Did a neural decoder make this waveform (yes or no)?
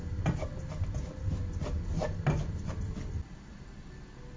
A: no